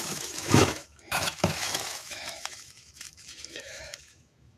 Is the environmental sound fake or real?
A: fake